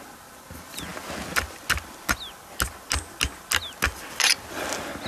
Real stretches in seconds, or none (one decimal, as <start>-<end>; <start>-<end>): 0.0-5.1